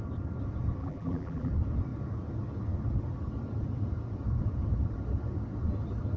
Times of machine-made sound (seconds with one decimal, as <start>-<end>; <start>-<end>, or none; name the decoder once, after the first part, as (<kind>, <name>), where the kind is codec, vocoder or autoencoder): 0.8-1.5 (vocoder, BigVGAN v2)